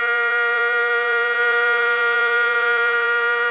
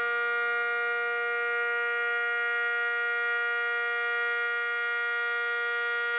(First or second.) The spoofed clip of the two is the first